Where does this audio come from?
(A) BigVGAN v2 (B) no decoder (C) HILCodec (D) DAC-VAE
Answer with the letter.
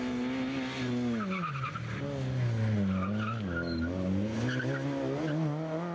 B